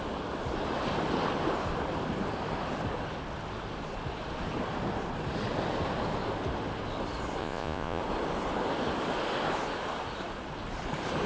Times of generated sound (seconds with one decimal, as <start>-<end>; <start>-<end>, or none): 7.4-8.0